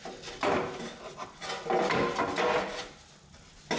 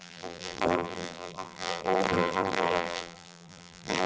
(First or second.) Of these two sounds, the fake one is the second